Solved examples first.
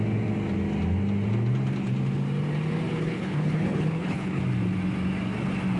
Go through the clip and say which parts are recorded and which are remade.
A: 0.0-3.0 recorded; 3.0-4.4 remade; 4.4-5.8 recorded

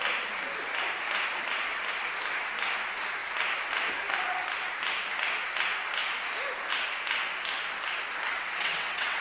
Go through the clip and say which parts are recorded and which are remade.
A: 0.0-8.3 recorded; 8.3-9.2 remade

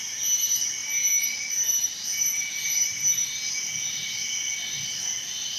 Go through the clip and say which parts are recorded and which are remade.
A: 0.0-5.6 recorded

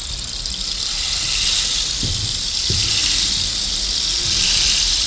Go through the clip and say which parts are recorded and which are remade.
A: 0.0-5.1 recorded

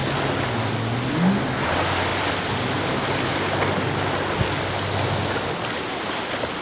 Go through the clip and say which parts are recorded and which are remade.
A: 0.0-6.6 recorded

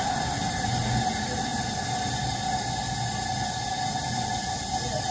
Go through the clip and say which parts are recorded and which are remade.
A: 0.0-5.1 recorded